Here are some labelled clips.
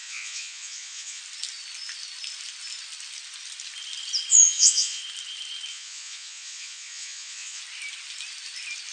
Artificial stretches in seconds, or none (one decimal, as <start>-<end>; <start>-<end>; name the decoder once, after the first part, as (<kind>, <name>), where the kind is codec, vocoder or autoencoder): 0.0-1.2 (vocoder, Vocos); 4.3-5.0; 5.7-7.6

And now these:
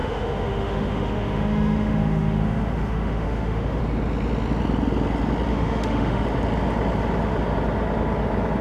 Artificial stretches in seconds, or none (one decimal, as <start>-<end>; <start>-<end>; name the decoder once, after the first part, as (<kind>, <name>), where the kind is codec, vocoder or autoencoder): 0.0-3.8 (autoencoder, DAC-VAE); 5.5-6.2

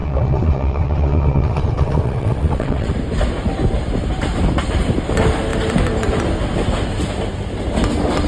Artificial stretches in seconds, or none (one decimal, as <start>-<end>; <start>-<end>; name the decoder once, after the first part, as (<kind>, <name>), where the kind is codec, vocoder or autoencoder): 0.0-2.9 (vocoder, WaveNeXt)